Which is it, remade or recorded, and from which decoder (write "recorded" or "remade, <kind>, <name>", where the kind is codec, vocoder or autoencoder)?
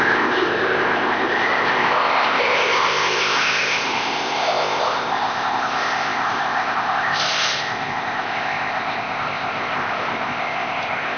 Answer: remade, codec, ZipCodec